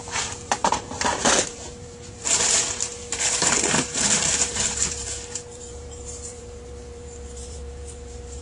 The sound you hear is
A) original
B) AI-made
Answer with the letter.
B